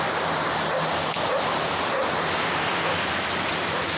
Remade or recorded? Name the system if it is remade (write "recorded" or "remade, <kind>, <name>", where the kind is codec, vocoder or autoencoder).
recorded